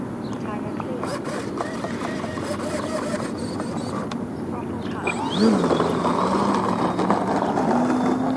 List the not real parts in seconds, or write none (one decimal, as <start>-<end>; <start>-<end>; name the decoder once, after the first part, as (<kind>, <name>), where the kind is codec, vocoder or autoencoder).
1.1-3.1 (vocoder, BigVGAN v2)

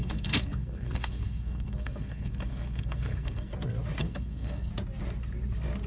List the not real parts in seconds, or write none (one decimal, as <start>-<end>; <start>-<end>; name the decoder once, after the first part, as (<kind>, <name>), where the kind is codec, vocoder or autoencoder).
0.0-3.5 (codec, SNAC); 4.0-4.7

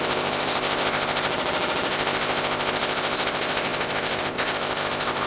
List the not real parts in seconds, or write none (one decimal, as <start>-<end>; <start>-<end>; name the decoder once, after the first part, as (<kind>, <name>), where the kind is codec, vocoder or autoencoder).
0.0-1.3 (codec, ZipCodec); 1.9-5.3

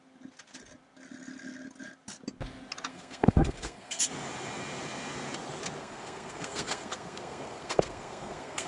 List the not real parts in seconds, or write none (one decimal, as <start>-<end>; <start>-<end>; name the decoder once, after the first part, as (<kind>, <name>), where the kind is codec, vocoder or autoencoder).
2.9-4.0 (codec, SNAC); 5.8-8.7

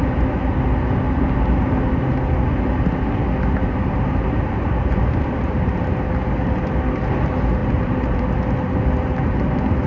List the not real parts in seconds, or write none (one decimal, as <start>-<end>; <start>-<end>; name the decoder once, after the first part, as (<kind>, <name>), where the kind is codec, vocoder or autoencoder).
3.6-5.6 (vocoder, BigVGAN v2); 7.6-8.2